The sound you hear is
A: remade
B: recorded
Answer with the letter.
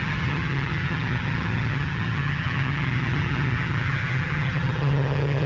A